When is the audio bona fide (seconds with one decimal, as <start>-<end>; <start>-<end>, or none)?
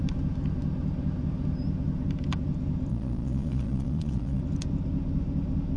0.0-2.9; 4.4-5.8